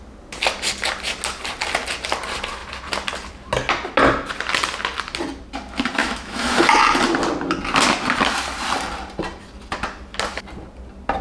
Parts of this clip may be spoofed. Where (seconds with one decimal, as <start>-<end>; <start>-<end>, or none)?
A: 6.0-6.6